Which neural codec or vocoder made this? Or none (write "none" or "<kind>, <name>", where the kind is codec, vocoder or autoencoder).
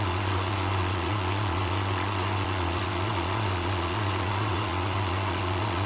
vocoder, Vocos